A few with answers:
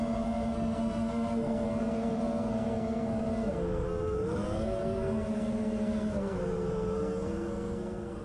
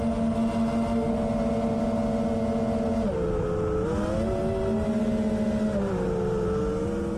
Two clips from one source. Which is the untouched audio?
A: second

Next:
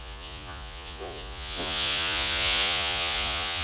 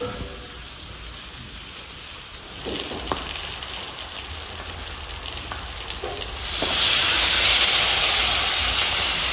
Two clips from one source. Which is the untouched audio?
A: second